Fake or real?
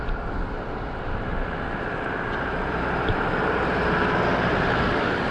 real